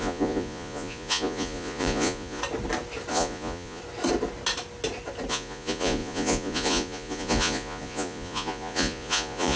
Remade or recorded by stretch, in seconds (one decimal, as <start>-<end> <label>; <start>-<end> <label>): 0.0-2.4 remade; 2.4-3.1 recorded; 3.1-3.8 remade; 3.8-5.3 recorded; 5.3-9.6 remade

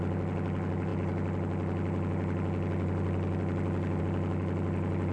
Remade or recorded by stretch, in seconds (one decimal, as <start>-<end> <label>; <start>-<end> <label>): 0.0-5.1 recorded

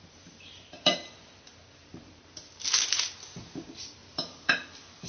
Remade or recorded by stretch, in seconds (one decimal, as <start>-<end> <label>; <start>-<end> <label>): 0.0-2.8 remade; 2.8-4.0 recorded; 4.0-4.5 remade; 4.5-5.1 recorded

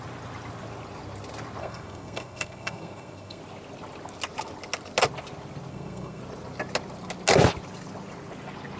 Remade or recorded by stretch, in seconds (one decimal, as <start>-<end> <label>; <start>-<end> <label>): 0.0-1.6 recorded; 1.6-3.4 remade; 3.4-5.7 recorded; 5.7-6.2 remade; 6.2-8.8 recorded

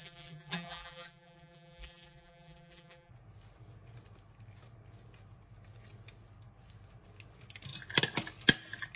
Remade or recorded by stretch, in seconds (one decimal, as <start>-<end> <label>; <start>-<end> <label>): 0.0-3.1 remade; 3.1-9.0 recorded

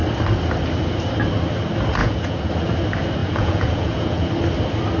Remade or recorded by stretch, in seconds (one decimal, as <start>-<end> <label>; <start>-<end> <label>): 0.0-2.0 recorded; 2.0-2.5 remade; 2.5-3.2 recorded; 3.2-4.3 remade; 4.3-5.0 recorded

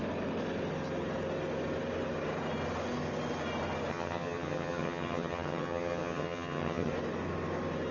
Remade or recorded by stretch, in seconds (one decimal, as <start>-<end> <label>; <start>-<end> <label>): 0.0-3.9 recorded; 3.9-6.9 remade; 6.9-7.9 recorded

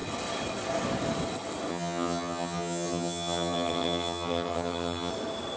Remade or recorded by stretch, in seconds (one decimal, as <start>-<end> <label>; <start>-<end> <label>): 0.0-1.7 recorded; 1.7-5.1 remade; 5.1-5.6 recorded